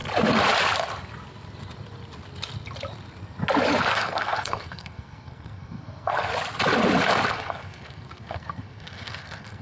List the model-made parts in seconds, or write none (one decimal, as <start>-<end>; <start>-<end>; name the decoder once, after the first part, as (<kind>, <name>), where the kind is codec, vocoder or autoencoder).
3.8-6.3 (codec, SNAC); 7.3-9.6

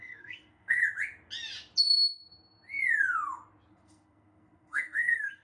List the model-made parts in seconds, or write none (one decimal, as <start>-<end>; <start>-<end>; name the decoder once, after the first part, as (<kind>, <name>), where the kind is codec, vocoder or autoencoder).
0.0-0.8 (codec, SNAC); 3.7-5.4